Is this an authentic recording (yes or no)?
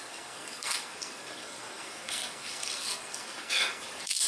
no